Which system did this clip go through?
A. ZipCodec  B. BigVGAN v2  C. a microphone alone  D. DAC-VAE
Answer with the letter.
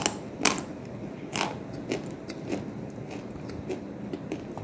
C